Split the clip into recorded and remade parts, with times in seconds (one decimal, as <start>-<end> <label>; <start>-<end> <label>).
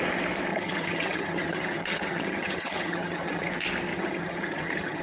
0.0-0.5 recorded; 0.5-3.5 remade; 3.5-3.9 recorded; 3.9-5.0 remade